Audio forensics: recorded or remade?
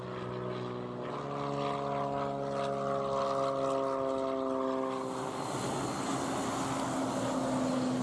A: recorded